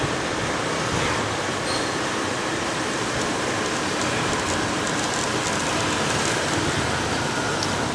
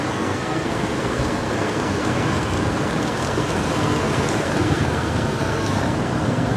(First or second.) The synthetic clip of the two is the second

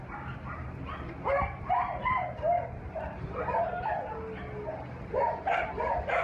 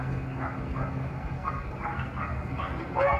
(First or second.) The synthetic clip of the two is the second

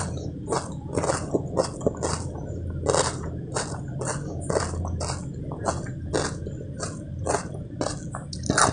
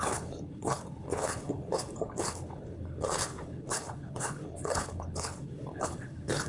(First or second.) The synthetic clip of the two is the second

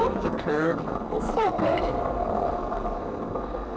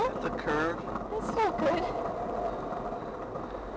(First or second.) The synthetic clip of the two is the first